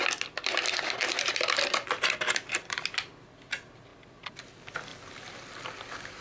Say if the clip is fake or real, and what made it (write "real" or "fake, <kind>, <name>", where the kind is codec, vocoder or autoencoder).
real